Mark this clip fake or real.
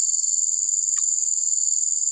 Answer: real